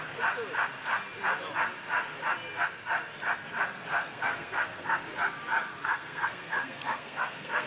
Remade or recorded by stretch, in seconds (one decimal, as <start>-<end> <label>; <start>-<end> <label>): 0.0-3.9 recorded; 3.9-5.0 remade; 5.0-5.7 recorded; 5.7-7.7 remade